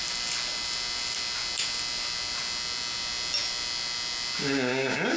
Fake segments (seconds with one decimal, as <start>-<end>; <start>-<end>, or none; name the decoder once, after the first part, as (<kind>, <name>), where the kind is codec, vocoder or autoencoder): none